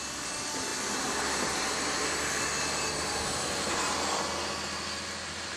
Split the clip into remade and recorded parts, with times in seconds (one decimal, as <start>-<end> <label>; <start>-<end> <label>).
0.0-0.7 recorded; 0.7-2.9 remade; 2.9-5.6 recorded